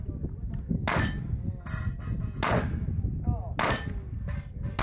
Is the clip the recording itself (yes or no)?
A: yes